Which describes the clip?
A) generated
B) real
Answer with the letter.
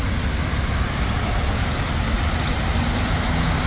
B